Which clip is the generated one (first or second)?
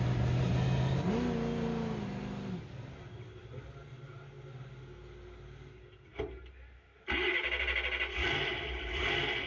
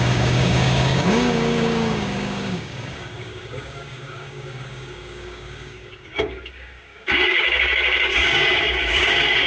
second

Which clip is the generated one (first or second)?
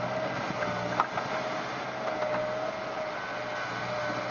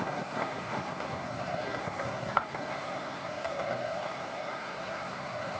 second